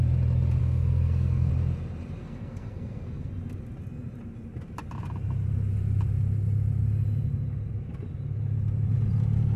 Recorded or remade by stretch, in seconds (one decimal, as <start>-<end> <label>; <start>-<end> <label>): 0.0-0.6 recorded; 0.6-1.5 remade; 1.5-2.2 recorded; 2.2-3.3 remade; 3.3-9.6 recorded